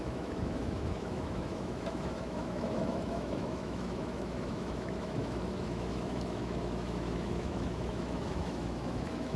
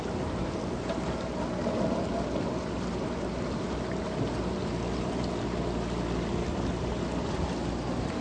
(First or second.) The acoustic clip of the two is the second